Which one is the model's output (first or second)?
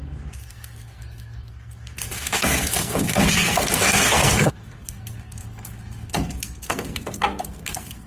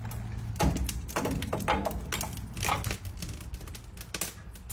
first